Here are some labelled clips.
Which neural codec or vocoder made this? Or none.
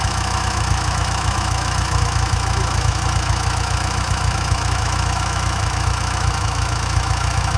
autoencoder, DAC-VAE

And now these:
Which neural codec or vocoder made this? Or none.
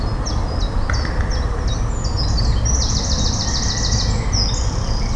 none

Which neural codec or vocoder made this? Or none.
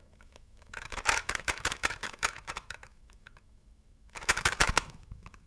autoencoder, DAC-VAE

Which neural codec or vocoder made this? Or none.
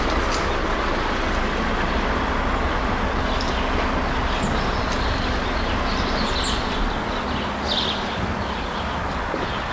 none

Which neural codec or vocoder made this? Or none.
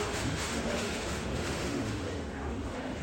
autoencoder, DAC-VAE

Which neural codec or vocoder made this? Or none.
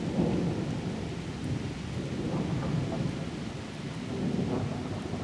none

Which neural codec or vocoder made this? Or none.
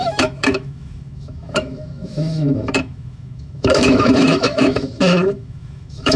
autoencoder, DAC-VAE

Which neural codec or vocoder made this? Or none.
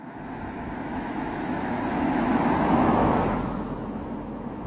autoencoder, DAC-VAE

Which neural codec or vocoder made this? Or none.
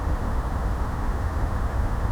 autoencoder, DAC-VAE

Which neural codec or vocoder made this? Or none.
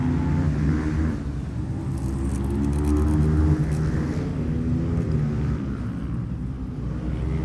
none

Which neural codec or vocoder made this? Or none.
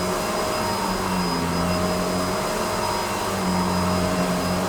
none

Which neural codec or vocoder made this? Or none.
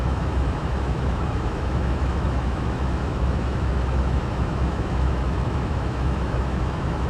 autoencoder, DAC-VAE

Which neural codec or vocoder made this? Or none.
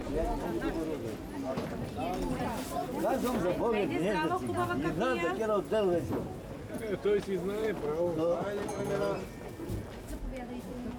none